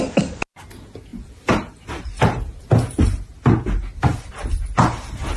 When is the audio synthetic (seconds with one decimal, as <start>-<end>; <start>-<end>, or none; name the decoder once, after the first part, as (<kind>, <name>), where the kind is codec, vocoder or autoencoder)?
none